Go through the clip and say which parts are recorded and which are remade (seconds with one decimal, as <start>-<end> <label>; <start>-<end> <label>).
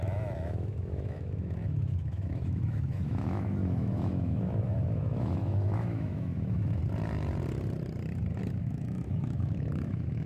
0.0-6.8 remade; 6.8-8.6 recorded; 8.6-10.3 remade